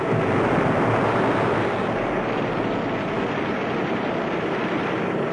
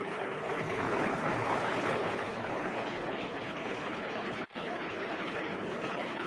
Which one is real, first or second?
first